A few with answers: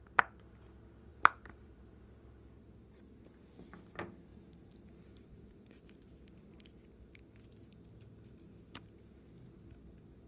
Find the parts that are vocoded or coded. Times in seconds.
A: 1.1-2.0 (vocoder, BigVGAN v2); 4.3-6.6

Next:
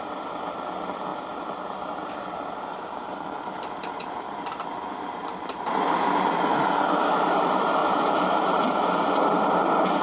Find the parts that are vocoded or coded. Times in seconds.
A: 0.0-7.8 (vocoder, BigVGAN v2); 8.4-10.0

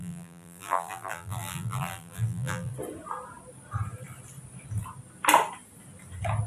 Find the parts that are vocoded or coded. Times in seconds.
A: 0.0-2.7 (vocoder, BigVGAN v2)

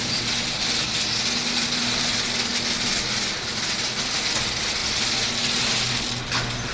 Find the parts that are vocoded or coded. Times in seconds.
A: none

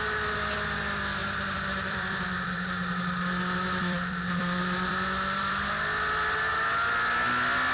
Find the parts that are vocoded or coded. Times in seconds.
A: 1.2-5.7 (vocoder, BigVGAN v2)

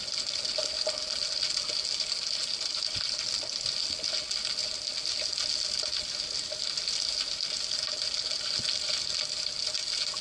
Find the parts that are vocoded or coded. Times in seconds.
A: none